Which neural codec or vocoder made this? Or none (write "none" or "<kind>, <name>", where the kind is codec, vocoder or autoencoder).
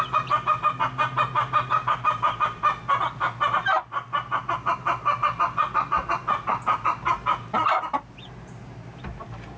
none